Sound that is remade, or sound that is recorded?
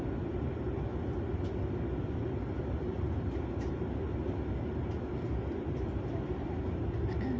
recorded